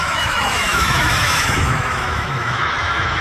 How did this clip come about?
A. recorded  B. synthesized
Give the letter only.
B